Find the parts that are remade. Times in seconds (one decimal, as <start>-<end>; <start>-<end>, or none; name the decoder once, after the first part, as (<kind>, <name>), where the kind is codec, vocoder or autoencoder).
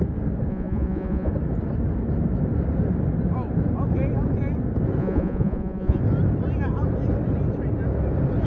0.5-1.3 (vocoder, Vocos); 5.0-6.0